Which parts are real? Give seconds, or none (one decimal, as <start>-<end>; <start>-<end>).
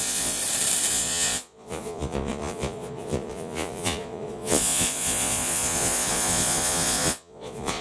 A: 0.4-0.9